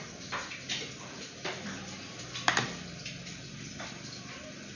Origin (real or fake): real